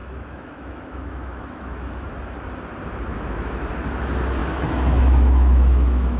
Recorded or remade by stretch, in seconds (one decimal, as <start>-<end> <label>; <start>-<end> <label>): 0.0-2.1 remade; 2.1-3.1 recorded; 3.1-3.7 remade; 3.7-4.4 recorded; 4.4-6.2 remade